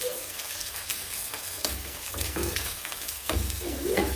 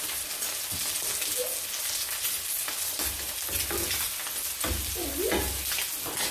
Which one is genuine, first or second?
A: second